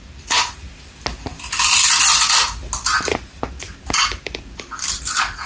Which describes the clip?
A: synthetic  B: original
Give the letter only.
B